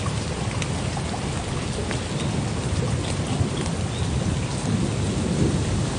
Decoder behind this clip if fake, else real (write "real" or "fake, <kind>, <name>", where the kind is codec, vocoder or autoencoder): real